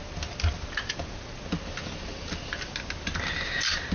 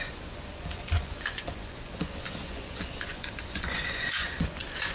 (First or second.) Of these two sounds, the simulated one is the second